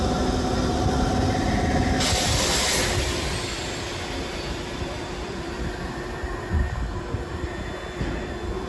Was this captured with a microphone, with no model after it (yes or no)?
yes